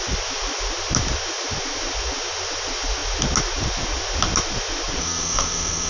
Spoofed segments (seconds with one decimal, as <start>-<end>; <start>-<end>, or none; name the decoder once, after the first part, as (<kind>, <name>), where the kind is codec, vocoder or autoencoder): 5.0-5.9 (codec, SNAC)